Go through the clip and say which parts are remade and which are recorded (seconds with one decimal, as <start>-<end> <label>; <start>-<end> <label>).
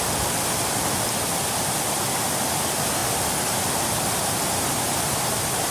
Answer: 0.0-5.7 recorded